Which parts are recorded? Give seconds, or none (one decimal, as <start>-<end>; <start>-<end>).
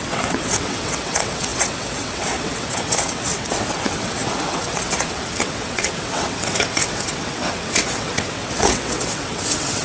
none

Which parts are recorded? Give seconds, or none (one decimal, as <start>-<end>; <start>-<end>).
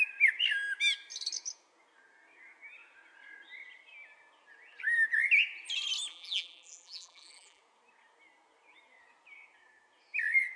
0.0-6.1; 7.6-10.6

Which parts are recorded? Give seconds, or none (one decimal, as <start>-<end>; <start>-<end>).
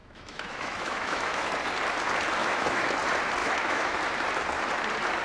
1.5-2.4; 2.9-3.4; 4.0-5.2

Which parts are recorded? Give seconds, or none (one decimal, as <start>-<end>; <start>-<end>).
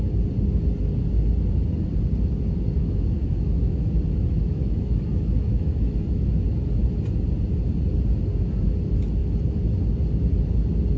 0.0-2.8; 6.3-11.0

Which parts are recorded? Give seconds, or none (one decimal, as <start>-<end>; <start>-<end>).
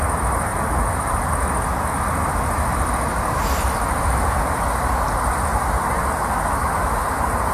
0.0-0.5; 1.3-5.5; 6.7-7.5